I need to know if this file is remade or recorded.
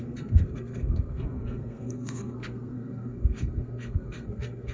remade